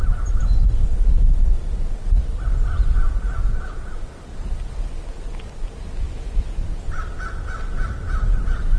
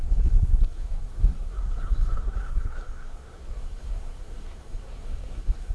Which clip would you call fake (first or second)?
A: second